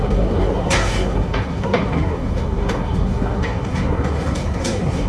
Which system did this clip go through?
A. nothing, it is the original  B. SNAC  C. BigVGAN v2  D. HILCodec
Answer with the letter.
B